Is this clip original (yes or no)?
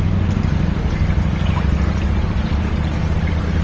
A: yes